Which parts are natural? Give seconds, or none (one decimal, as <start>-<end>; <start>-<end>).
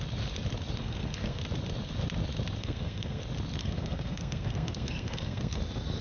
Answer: 0.0-0.8; 1.4-2.6; 3.2-3.6; 5.6-6.0